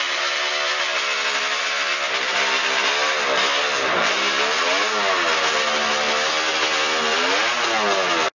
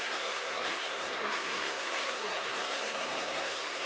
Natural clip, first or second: first